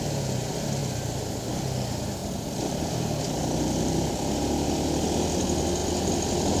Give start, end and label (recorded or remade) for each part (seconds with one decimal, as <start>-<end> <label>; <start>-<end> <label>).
0.0-0.8 recorded; 0.8-1.5 remade; 1.5-2.2 recorded; 2.2-4.7 remade; 4.7-6.6 recorded